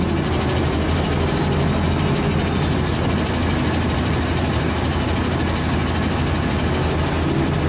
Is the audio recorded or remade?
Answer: recorded